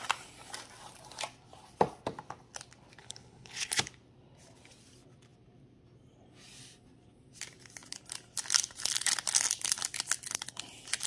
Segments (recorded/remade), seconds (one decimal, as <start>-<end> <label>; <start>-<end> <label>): 0.0-3.0 recorded; 3.0-3.8 remade; 3.8-11.1 recorded